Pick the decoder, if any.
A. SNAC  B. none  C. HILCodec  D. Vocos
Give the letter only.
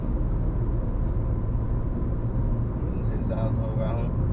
B